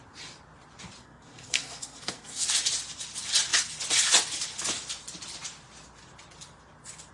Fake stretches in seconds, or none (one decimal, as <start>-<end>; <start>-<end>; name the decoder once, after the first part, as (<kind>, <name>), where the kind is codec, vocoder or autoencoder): 1.0-2.6 (codec, SNAC)